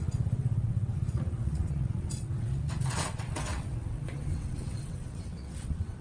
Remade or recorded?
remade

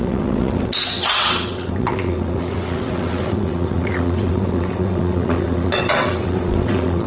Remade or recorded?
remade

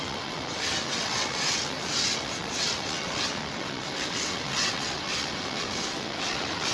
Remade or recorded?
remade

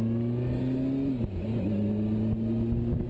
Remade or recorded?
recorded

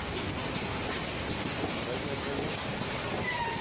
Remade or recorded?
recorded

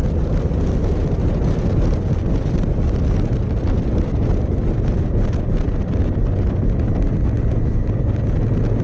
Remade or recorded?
recorded